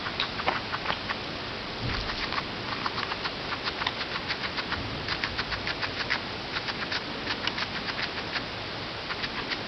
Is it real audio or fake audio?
real